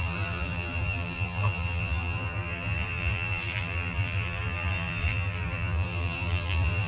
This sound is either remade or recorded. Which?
remade